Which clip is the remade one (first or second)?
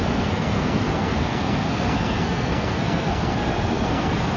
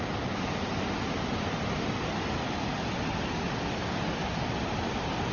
first